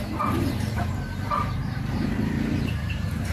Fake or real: fake